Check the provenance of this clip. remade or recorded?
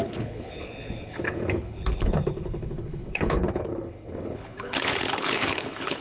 remade